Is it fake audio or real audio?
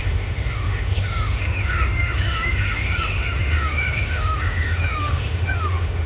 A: fake